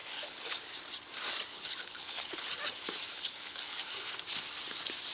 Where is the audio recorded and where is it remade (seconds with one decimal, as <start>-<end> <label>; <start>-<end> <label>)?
0.0-0.6 remade; 0.6-1.5 recorded; 1.5-2.5 remade; 2.5-3.1 recorded; 3.1-3.9 remade; 3.9-5.1 recorded

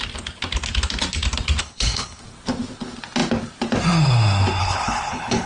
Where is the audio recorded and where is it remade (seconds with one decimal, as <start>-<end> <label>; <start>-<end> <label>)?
0.0-1.6 recorded; 1.6-2.2 remade; 2.2-4.6 recorded; 4.6-5.5 remade

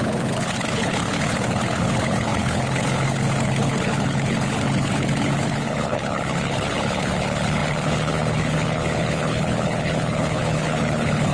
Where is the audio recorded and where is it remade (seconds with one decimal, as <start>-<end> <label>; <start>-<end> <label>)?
0.0-11.3 remade

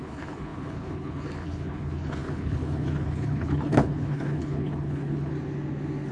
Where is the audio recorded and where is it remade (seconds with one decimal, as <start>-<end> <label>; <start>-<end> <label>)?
0.0-5.3 remade; 5.3-6.1 recorded

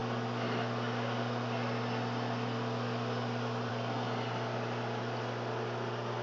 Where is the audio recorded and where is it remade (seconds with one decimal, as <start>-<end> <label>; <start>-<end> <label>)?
0.0-6.2 recorded